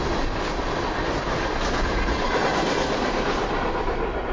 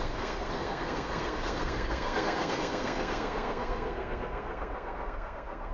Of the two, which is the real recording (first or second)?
first